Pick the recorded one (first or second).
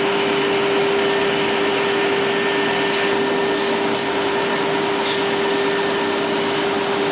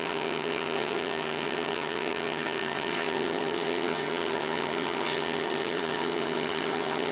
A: first